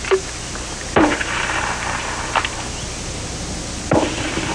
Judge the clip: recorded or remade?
recorded